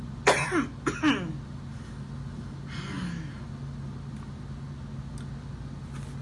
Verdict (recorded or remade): recorded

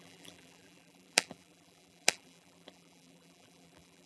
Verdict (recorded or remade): remade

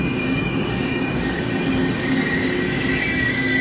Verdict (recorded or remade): remade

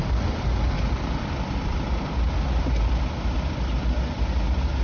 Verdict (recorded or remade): recorded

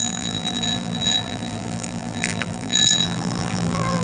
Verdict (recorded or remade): remade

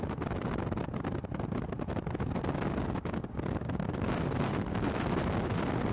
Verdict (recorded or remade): recorded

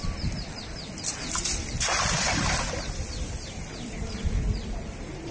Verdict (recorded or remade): remade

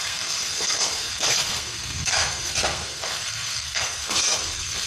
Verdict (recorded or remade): remade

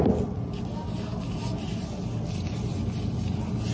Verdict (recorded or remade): recorded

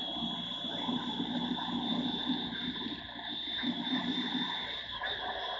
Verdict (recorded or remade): remade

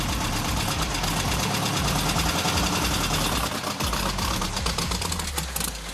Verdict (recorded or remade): recorded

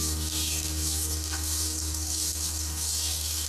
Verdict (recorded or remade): remade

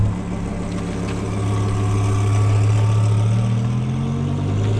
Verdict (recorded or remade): recorded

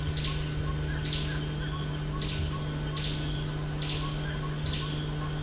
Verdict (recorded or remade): recorded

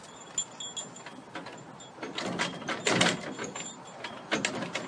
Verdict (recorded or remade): recorded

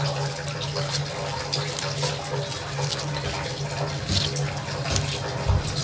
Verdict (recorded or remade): recorded